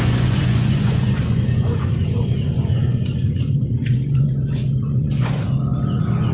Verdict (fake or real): fake